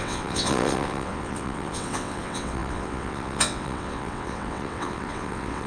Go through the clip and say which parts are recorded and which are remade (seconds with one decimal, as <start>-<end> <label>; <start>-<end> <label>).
0.0-5.7 remade